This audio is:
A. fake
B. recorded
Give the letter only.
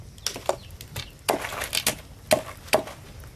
B